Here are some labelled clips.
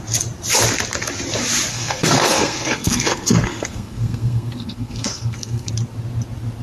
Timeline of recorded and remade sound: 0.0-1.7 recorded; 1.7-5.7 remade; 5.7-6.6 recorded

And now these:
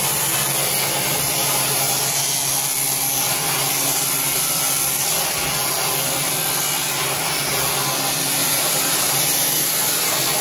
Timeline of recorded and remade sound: 0.0-1.4 recorded; 1.4-2.0 remade; 2.0-8.4 recorded; 8.4-9.7 remade; 9.7-10.4 recorded